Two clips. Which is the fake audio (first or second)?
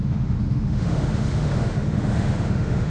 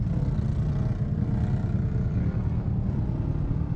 first